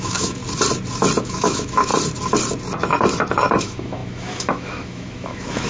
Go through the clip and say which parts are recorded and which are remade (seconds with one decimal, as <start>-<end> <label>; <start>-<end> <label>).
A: 0.0-0.4 remade; 0.4-1.2 recorded; 1.2-1.9 remade; 1.9-3.6 recorded; 3.6-5.7 remade